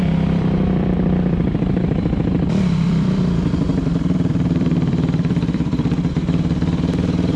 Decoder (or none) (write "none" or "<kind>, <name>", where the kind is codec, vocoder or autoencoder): vocoder, BigVGAN v2